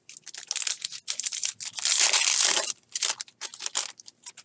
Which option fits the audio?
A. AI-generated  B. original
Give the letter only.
B